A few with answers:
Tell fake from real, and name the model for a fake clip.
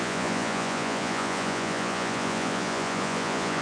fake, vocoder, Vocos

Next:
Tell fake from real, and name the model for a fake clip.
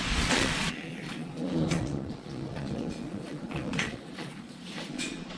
fake, vocoder, Vocos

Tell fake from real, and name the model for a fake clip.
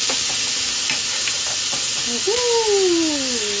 real